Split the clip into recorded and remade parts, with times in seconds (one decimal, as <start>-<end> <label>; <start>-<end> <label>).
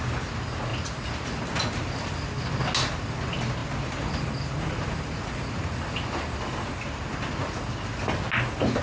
0.0-3.6 recorded; 3.6-7.3 remade; 7.3-8.8 recorded